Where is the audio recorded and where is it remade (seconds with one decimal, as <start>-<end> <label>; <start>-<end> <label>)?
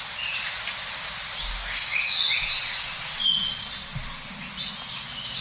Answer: 0.0-1.6 recorded; 1.6-2.2 remade; 2.2-5.4 recorded